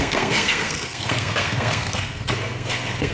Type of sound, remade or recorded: remade